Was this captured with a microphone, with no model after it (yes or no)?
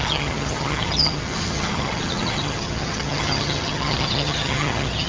no